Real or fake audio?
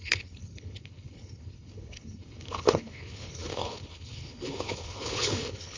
fake